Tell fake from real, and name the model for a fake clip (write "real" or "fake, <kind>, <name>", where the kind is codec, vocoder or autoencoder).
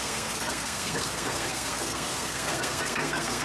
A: fake, codec, SNAC